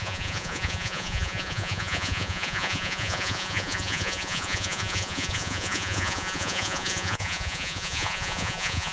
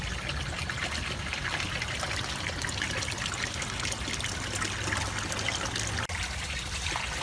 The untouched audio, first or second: second